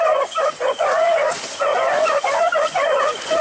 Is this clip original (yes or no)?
no